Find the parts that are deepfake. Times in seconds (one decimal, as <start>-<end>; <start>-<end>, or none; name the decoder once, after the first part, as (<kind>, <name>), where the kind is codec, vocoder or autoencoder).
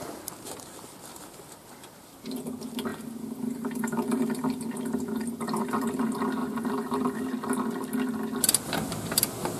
2.9-6.0 (vocoder, BigVGAN v2); 6.4-7.2